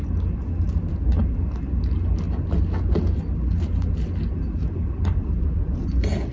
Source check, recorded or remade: recorded